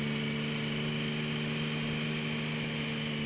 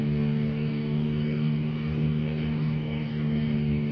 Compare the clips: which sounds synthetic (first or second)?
second